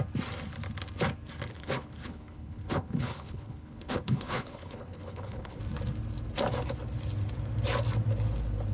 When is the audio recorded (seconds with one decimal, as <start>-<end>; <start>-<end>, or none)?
0.0-1.5; 5.6-8.7